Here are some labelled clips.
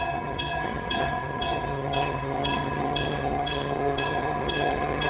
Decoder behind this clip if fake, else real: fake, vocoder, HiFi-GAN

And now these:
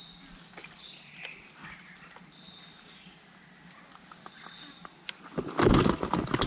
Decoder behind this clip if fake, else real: real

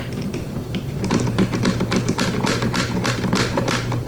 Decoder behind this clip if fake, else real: fake, vocoder, BigVGAN v2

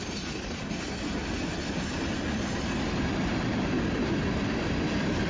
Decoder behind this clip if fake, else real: real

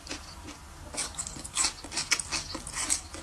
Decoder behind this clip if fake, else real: real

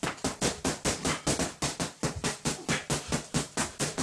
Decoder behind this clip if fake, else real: real